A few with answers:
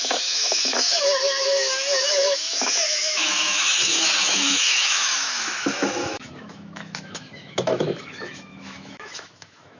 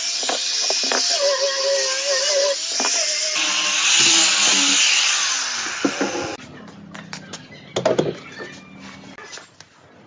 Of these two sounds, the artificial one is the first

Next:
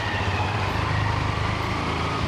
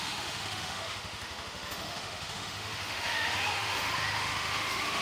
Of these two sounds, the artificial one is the second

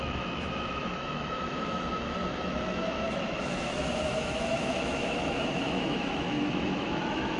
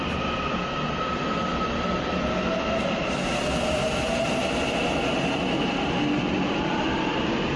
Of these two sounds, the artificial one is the first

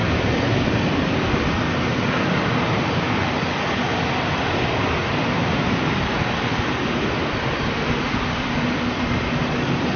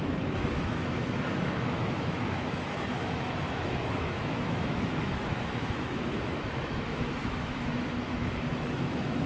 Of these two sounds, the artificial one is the second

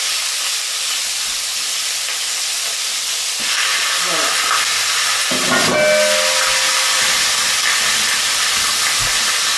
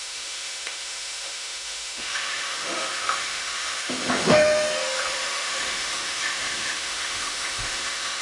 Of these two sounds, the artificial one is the second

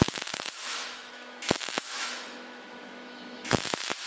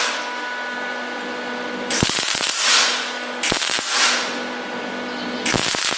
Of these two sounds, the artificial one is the first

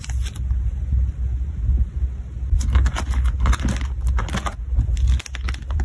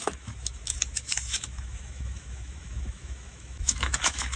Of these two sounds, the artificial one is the second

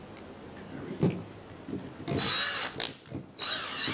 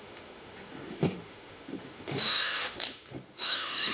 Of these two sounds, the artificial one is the second